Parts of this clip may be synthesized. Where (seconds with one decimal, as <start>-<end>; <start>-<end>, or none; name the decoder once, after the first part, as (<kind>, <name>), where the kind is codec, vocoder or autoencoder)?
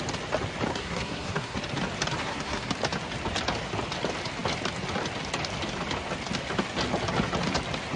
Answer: 0.7-1.6 (codec, SNAC); 2.2-2.7